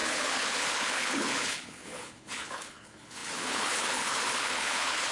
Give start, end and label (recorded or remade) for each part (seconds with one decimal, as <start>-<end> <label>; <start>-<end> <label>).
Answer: 0.0-5.1 remade